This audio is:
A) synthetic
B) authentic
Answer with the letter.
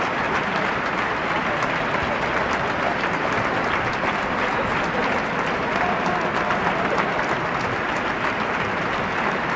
B